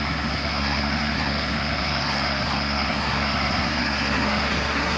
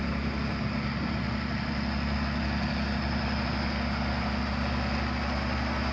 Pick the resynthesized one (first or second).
first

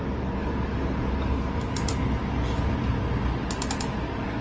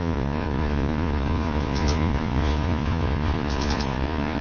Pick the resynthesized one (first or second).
second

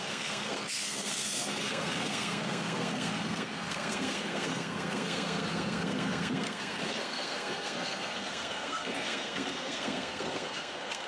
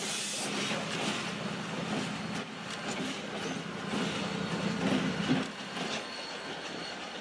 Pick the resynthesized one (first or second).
first